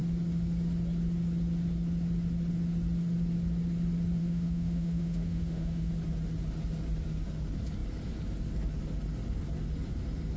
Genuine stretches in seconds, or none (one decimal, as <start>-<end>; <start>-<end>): 0.0-4.2; 5.9-10.4